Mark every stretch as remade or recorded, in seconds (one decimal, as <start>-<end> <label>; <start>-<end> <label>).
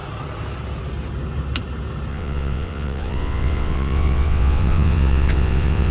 0.0-2.1 recorded; 2.1-5.9 remade